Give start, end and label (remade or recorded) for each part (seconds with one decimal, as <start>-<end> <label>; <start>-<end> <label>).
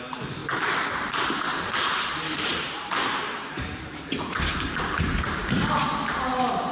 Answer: 0.0-0.4 remade; 0.4-0.9 recorded; 0.9-6.7 remade